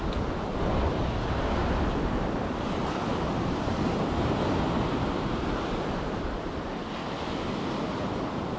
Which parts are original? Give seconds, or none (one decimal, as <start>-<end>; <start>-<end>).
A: 0.0-1.6; 5.5-8.6